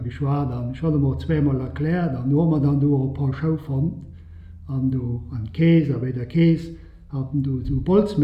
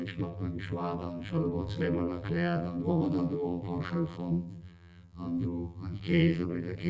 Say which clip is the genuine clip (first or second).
first